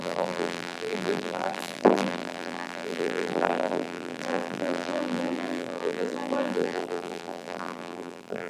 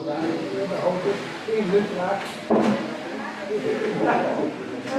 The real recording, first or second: second